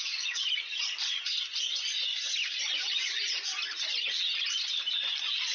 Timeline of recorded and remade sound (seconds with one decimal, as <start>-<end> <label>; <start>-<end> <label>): 0.0-2.1 recorded; 2.1-5.1 remade; 5.1-5.5 recorded